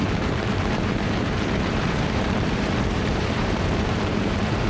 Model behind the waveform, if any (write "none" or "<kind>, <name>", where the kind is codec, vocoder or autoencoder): vocoder, BigVGAN v2